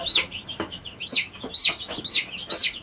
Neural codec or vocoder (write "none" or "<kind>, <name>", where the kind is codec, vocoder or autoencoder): autoencoder, DAC-VAE